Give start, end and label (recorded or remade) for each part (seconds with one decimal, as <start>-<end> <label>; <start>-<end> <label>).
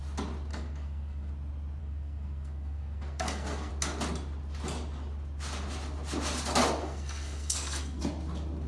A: 0.0-0.5 recorded; 0.5-1.3 remade; 1.3-1.8 recorded; 1.8-3.7 remade; 3.7-6.8 recorded; 6.8-8.0 remade; 8.0-8.7 recorded